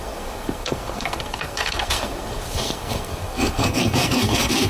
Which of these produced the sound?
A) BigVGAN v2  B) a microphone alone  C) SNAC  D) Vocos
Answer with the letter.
C